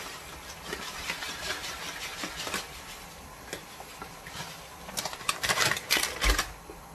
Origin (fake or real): fake